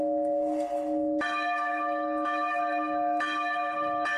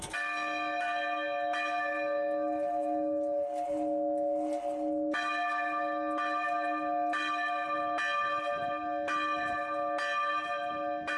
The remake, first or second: first